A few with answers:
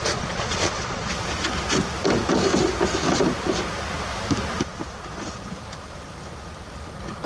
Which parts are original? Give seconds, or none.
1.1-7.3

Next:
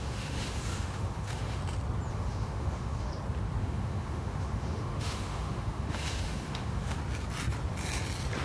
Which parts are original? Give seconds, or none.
1.6-2.1; 3.1-3.6; 7.0-8.4

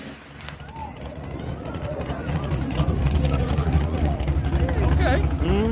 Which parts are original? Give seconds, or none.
0.0-0.8; 4.2-5.7

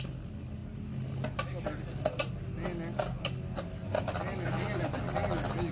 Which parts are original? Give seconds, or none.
0.0-5.7

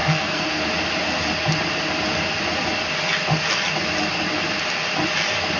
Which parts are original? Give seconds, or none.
0.5-5.6

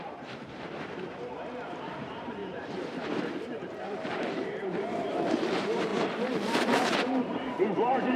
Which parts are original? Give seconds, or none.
none

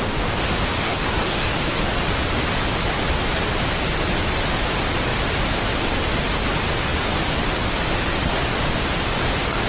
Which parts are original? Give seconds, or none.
0.0-0.8; 1.5-9.7

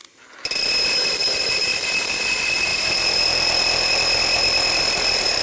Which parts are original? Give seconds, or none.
0.0-1.1